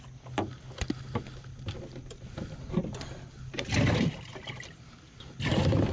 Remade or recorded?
recorded